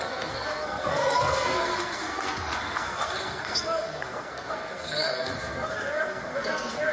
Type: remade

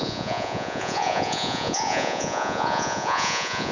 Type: remade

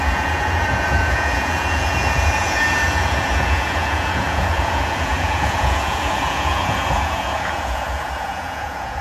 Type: remade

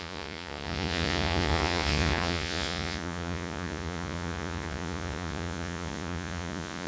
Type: remade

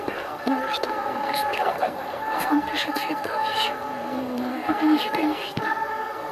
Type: remade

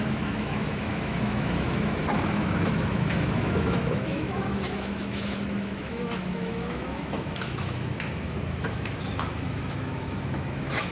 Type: remade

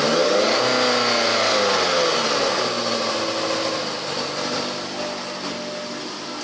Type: recorded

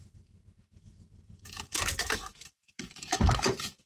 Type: remade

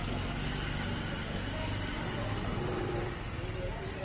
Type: recorded